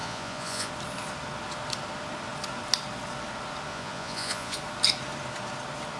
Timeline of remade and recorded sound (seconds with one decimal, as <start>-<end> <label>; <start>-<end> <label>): 0.0-0.7 remade; 0.7-3.7 recorded; 3.7-4.6 remade; 4.6-6.0 recorded